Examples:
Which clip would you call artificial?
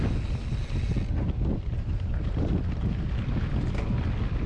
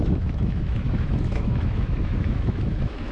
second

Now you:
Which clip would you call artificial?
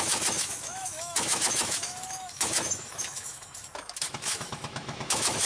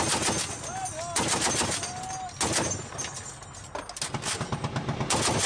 first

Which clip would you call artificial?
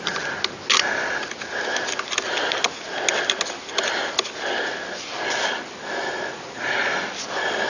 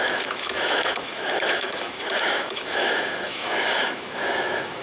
second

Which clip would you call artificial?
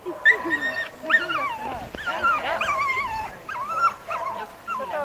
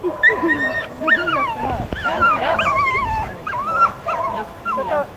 second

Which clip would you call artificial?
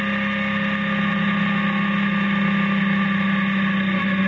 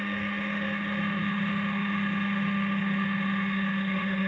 second